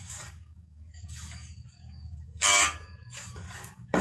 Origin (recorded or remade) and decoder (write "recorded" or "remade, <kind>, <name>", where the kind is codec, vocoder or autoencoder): remade, codec, DAC